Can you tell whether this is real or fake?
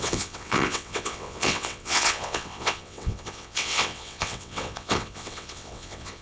fake